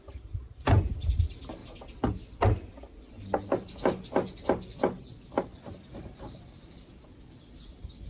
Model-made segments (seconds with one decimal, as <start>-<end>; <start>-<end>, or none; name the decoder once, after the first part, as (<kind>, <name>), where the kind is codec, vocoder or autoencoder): none